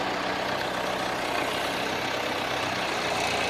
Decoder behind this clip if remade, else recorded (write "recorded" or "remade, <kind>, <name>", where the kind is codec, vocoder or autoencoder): recorded